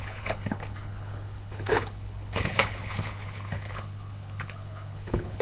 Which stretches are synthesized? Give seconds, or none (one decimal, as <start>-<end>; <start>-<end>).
0.0-5.4